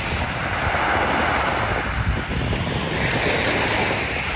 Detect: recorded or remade recorded